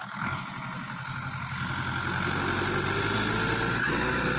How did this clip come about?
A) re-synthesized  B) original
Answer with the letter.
B